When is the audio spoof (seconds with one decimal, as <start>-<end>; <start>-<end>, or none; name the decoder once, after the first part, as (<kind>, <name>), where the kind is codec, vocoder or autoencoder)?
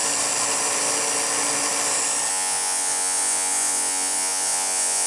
2.3-5.1 (vocoder, Vocos)